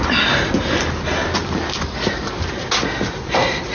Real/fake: real